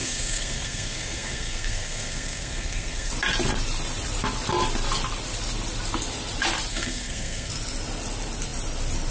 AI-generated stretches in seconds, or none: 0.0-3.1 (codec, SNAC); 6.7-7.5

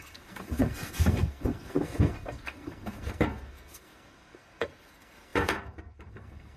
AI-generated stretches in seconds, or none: 0.0-6.6 (codec, SNAC)